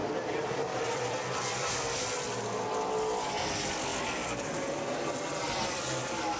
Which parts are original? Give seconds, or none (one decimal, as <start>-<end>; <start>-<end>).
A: 1.7-3.9; 5.8-6.4